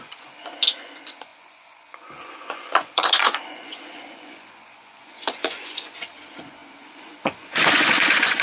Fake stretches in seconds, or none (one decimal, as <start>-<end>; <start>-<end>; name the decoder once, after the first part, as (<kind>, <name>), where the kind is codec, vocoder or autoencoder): 0.0-8.4 (vocoder, Vocos)